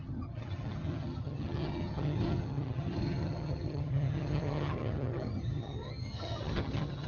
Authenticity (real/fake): fake